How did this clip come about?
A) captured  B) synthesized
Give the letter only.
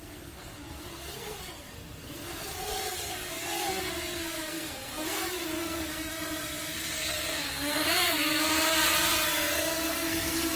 B